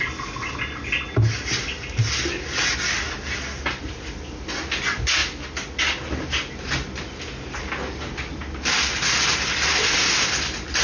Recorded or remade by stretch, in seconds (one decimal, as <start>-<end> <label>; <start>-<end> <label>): 0.0-10.8 recorded